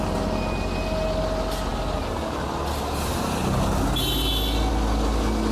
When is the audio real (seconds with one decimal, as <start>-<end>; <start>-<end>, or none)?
0.0-5.5